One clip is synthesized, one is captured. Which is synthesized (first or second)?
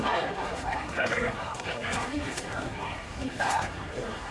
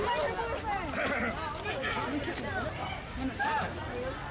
first